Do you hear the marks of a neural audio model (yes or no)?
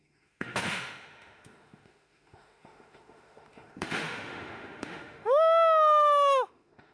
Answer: yes